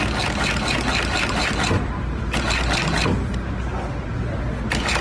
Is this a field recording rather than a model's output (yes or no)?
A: yes